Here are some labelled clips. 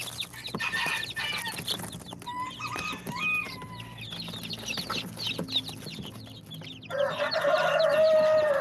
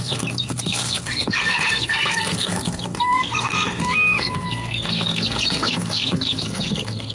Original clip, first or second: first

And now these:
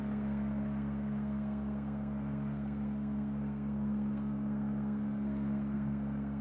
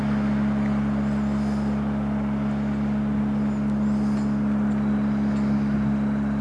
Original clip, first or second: second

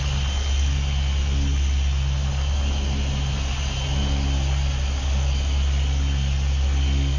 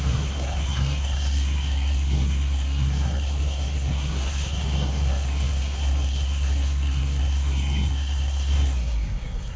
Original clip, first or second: first